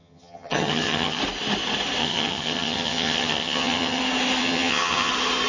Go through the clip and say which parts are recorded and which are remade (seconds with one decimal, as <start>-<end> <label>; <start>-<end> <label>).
0.0-1.2 remade; 1.2-2.0 recorded; 2.0-4.0 remade; 4.0-4.4 recorded; 4.4-5.1 remade; 5.1-5.5 recorded